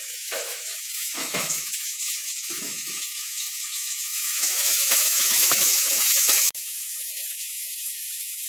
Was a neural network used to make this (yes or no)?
yes